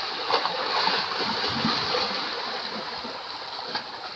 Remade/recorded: recorded